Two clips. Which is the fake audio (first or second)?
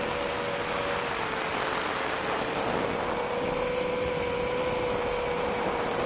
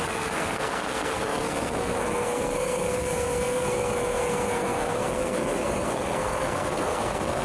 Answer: second